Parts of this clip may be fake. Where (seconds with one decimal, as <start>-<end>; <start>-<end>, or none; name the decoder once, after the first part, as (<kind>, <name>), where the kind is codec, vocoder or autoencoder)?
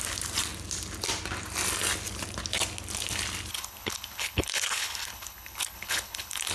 3.5-6.5 (codec, HILCodec)